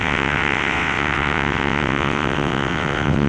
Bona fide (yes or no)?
no